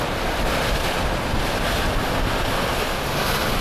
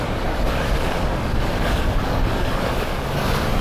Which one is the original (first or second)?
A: first